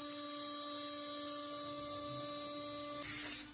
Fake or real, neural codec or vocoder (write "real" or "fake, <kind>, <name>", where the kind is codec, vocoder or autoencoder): real